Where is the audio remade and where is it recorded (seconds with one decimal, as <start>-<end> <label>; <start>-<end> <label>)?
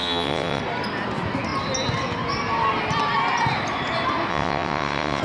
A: 0.0-0.6 remade; 0.6-4.3 recorded; 4.3-5.2 remade